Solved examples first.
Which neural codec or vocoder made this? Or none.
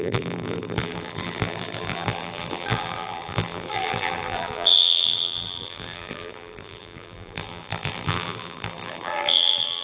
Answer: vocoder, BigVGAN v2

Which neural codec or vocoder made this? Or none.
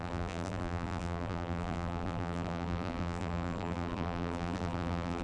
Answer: vocoder, BigVGAN v2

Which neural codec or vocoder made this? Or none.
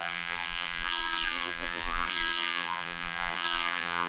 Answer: vocoder, BigVGAN v2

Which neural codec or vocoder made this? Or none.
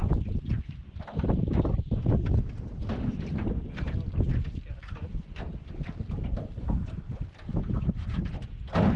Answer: vocoder, BigVGAN v2